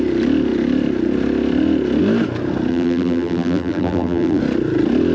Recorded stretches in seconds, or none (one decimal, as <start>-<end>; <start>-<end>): 0.0-2.7; 4.4-5.1

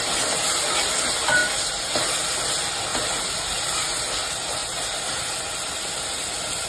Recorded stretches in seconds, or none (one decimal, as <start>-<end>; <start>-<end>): 0.0-2.9; 4.0-4.6; 5.4-6.7

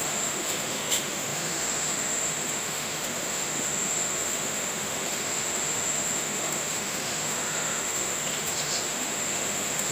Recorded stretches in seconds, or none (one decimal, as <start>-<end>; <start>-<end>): none